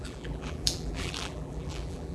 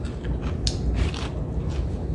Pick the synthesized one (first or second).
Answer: first